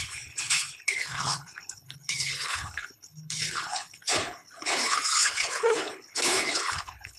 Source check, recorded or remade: remade